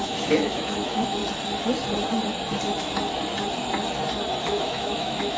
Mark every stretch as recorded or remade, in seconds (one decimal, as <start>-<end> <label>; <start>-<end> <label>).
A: 0.0-1.2 remade; 1.2-4.4 recorded; 4.4-5.4 remade